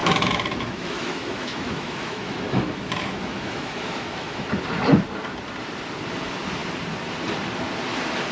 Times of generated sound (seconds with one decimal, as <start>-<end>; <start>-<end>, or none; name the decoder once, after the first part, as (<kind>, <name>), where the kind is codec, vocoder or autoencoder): 0.0-4.5 (autoencoder, DAC-VAE)